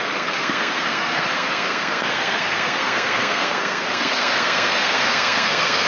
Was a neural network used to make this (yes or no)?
yes